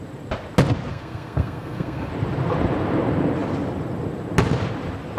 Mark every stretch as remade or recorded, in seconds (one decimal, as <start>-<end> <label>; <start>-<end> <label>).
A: 0.0-0.9 recorded; 0.9-2.1 remade; 2.1-5.2 recorded